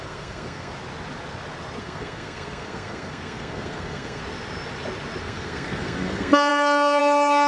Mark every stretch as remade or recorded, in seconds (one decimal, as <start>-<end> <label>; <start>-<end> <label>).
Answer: 0.0-0.7 remade; 0.7-1.8 recorded; 1.8-4.2 remade; 4.2-5.2 recorded; 5.2-7.5 remade